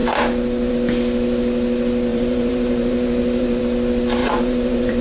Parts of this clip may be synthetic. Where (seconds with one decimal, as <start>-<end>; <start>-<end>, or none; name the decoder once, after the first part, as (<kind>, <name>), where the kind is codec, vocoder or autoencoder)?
2.1-3.6 (vocoder, BigVGAN v2); 4.2-5.0

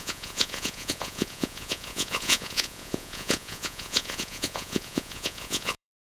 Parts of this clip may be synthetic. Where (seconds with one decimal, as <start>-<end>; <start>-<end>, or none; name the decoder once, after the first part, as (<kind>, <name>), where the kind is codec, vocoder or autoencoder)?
0.0-6.2 (vocoder, Vocos)

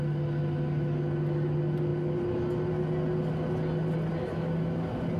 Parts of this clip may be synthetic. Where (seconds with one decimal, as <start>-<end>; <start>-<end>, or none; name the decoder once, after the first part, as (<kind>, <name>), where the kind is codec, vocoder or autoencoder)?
none

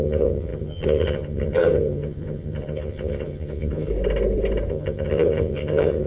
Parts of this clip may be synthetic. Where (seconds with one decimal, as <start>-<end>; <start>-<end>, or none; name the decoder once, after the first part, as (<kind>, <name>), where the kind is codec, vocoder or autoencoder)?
0.0-3.9 (vocoder, HiFi-GAN); 4.7-6.1

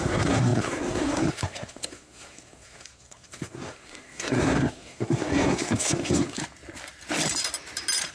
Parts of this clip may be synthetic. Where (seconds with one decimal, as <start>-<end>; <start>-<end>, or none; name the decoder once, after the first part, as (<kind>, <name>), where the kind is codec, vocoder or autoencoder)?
0.0-6.4 (codec, SNAC)

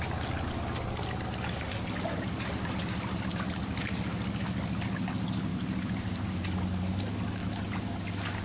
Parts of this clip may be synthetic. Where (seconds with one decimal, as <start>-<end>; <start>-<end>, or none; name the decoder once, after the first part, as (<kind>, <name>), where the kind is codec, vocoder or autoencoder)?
5.5-6.4 (vocoder, BigVGAN v2)

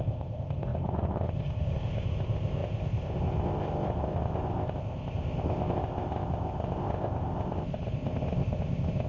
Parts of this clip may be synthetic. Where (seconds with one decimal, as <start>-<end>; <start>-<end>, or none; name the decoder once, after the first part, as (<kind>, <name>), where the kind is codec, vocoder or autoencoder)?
0.0-9.1 (codec, ZipCodec)

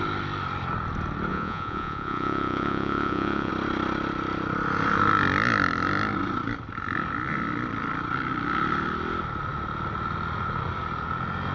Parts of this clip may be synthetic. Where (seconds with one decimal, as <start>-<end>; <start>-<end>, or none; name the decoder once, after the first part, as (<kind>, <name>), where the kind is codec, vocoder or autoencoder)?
1.3-3.5 (vocoder, Vocos)